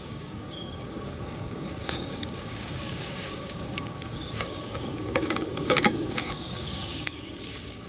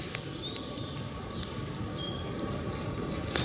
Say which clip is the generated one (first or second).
first